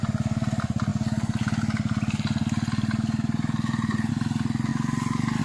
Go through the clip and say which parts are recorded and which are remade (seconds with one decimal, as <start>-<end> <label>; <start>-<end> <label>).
0.0-5.4 recorded